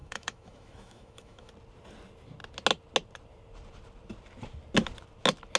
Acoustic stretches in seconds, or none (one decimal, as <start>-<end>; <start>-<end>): 1.5-5.6